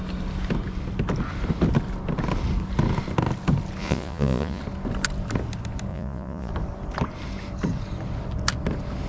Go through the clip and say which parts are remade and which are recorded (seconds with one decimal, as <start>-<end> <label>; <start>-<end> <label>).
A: 0.0-3.8 recorded; 3.8-4.6 remade; 4.6-5.9 recorded; 5.9-6.5 remade; 6.5-9.1 recorded